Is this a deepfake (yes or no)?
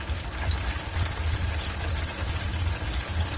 no